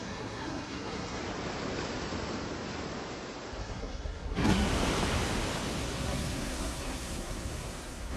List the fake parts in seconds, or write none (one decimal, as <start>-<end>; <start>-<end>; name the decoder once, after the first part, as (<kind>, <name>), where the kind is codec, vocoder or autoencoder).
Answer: 0.0-1.2 (codec, SNAC); 3.6-4.7; 5.8-8.2